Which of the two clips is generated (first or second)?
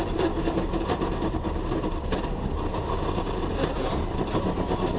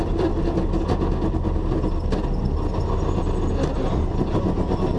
first